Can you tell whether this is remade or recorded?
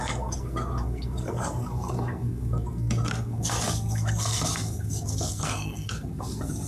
remade